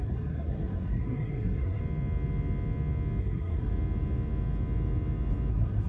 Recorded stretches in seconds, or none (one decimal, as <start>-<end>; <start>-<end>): 1.8-3.2; 3.7-5.5